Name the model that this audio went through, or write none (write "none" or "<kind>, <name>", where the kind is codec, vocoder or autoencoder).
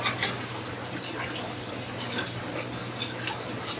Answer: none